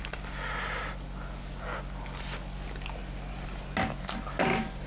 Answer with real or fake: real